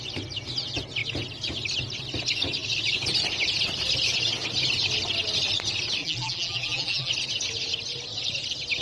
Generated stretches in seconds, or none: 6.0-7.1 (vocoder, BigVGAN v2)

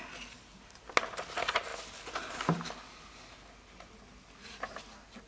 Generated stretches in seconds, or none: none

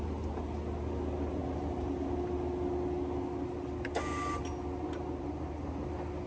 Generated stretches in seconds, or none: none